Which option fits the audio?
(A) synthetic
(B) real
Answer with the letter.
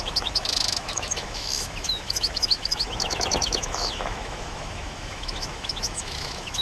A